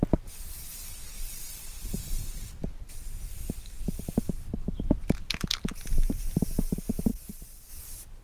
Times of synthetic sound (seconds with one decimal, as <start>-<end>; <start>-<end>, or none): none